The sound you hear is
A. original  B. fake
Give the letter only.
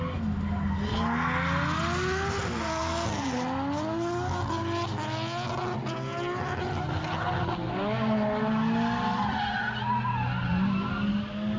A